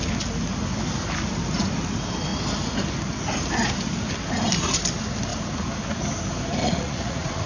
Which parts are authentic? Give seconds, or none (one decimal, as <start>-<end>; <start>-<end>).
0.0-6.6